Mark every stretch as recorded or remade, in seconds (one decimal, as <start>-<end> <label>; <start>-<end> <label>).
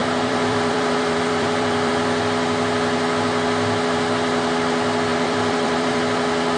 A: 0.0-1.9 remade; 1.9-5.1 recorded; 5.1-6.0 remade; 6.0-6.6 recorded